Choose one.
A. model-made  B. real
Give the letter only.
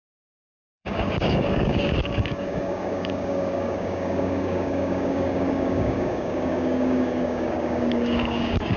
A